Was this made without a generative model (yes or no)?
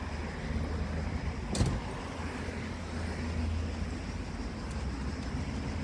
yes